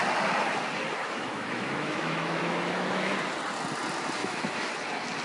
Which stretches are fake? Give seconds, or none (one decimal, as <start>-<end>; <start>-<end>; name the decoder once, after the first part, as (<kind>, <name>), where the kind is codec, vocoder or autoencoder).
1.0-3.1 (autoencoder, DAC-VAE); 4.2-4.7